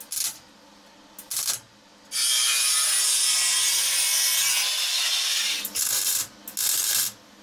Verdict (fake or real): real